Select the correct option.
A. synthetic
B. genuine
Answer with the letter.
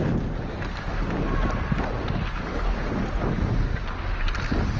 B